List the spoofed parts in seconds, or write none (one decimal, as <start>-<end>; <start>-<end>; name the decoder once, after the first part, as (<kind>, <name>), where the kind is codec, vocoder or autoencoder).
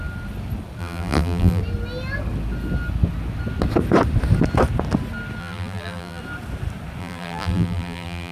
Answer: 0.8-1.6 (vocoder, BigVGAN v2); 5.4-6.2; 7.0-8.3